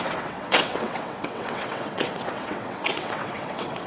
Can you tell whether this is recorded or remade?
remade